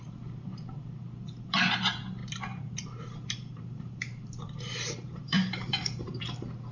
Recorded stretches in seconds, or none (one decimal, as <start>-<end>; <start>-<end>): 0.0-2.2; 6.2-6.7